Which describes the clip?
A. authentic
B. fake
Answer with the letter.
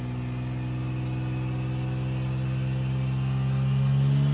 A